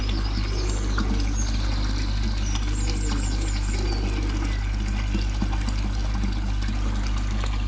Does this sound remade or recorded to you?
recorded